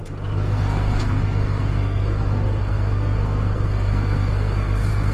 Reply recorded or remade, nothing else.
remade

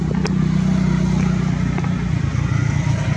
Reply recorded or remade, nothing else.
recorded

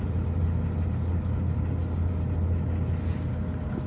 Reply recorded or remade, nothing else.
recorded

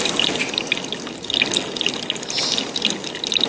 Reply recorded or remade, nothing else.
recorded